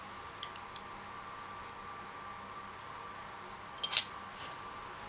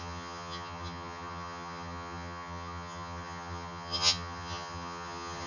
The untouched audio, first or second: first